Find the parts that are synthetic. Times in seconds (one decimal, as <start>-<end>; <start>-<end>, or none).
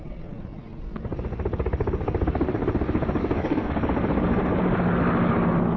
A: 3.2-3.7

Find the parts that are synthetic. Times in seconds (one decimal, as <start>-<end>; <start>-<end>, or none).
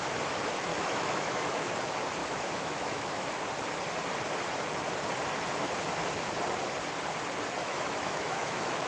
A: 0.7-1.7; 2.2-3.4; 7.6-8.9